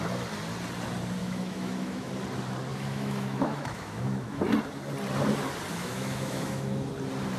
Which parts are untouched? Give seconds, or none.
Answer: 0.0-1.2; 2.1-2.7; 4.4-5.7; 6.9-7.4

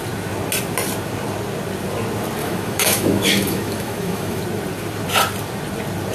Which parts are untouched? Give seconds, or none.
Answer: 0.0-2.4; 4.4-6.1

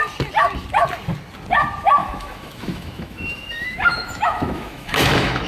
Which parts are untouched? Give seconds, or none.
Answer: 0.0-2.0

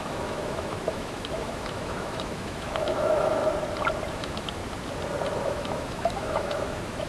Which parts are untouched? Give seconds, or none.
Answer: 3.4-4.1; 4.6-5.4

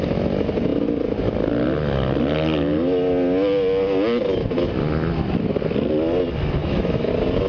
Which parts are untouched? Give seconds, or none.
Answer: 0.0-6.6; 7.1-7.5

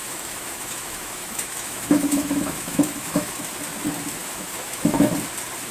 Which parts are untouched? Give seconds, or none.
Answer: 3.4-4.2; 5.1-5.7